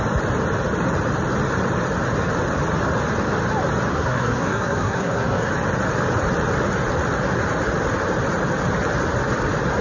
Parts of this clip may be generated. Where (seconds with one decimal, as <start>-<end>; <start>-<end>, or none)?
3.9-5.5